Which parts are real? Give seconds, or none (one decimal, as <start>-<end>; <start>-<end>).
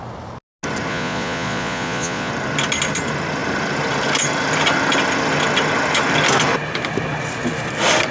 0.0-0.9; 2.3-8.1